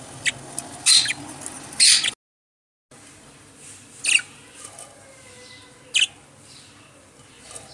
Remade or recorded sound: recorded